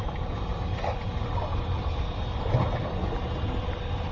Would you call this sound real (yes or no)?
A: yes